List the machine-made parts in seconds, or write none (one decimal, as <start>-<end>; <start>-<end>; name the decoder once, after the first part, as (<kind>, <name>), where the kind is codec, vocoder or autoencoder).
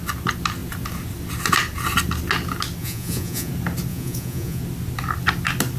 2.8-3.5 (vocoder, Vocos); 3.9-4.6